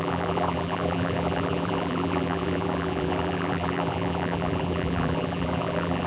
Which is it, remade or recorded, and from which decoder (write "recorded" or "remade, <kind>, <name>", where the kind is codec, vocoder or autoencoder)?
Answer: remade, vocoder, BigVGAN v2